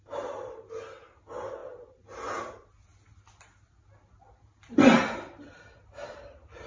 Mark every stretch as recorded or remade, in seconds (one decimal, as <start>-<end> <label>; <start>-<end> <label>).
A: 0.0-6.7 recorded